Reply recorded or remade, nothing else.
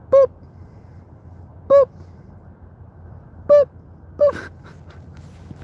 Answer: recorded